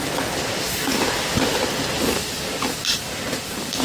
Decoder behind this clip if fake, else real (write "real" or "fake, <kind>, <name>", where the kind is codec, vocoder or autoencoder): real